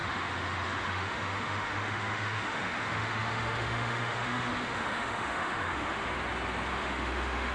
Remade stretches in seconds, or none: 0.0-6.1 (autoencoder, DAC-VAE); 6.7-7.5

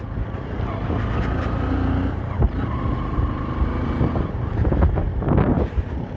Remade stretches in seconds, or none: none